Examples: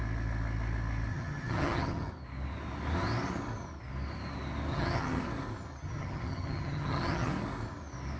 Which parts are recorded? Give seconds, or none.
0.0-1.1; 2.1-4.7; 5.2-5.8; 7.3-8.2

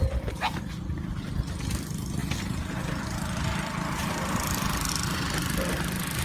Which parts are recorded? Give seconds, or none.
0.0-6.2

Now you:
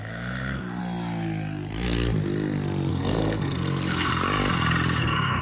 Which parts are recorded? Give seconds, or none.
0.8-2.9; 4.1-5.0

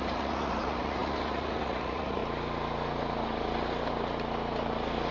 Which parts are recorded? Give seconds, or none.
2.2-5.1

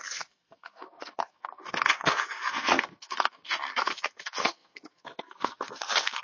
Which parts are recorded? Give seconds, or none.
none

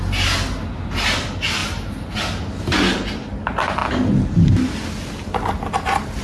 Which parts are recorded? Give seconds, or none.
0.0-6.2

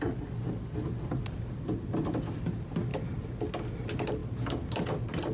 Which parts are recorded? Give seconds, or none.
0.0-5.3

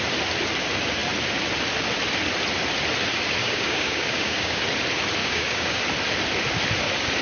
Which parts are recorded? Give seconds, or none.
0.0-3.4; 4.6-5.2; 5.8-7.2